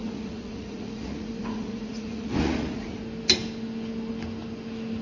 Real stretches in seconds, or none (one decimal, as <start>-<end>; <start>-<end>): 3.0-5.0